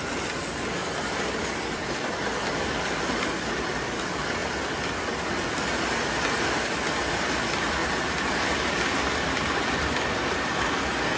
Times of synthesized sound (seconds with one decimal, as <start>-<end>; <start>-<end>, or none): 0.8-3.1; 7.8-9.7